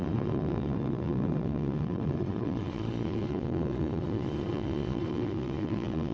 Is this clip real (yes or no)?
no